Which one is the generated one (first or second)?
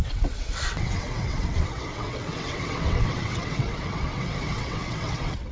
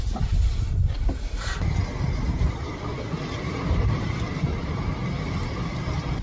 first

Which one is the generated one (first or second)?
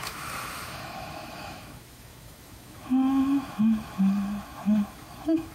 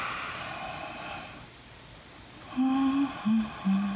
first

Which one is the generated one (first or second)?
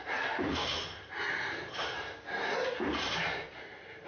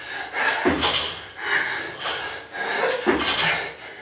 first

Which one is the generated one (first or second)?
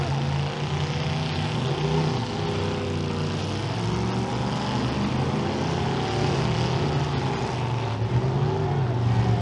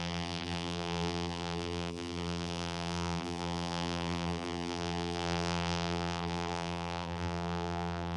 second